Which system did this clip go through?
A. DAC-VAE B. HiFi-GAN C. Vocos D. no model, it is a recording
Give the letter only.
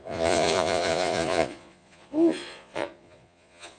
C